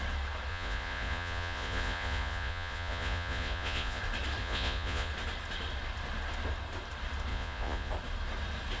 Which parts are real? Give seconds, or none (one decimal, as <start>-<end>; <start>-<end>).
0.0-0.5; 4.0-4.4; 5.1-7.3; 7.9-8.8